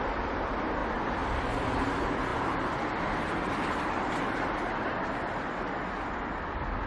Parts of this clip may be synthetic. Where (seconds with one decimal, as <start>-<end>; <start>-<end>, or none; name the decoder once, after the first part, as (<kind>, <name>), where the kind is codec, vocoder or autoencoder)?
none